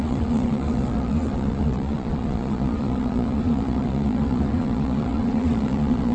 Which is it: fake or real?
fake